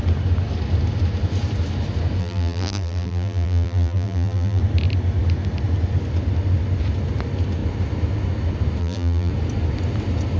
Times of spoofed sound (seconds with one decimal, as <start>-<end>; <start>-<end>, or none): 2.2-4.6; 8.8-9.3